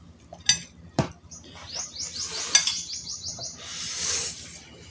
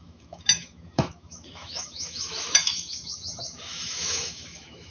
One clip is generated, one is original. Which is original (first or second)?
first